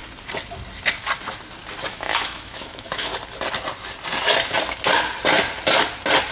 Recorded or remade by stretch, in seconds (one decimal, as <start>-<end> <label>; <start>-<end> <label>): 0.0-1.9 recorded; 1.9-3.1 remade; 3.1-6.3 recorded